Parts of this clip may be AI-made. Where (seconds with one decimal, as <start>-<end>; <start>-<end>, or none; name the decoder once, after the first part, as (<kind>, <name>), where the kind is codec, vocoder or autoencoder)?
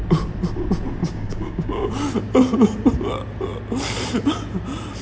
1.0-1.9 (codec, DAC)